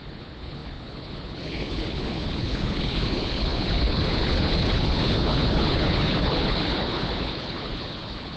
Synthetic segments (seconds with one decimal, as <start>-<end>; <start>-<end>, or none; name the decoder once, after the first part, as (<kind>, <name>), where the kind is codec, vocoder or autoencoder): 0.0-8.4 (codec, HILCodec)